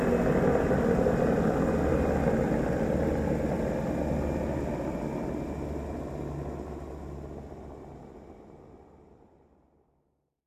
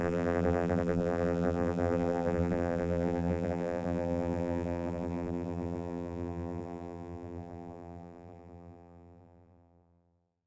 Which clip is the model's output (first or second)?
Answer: second